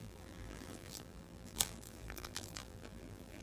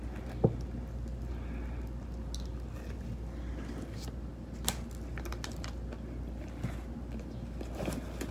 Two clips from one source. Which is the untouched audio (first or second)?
second